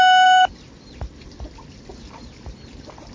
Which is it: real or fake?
real